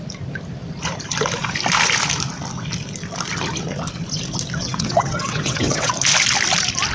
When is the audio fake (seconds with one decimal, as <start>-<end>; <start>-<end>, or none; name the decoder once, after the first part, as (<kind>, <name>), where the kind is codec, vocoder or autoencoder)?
4.6-5.9 (vocoder, WaveNeXt)